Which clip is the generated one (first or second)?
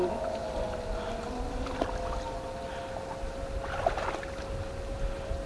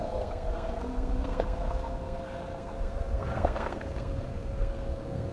second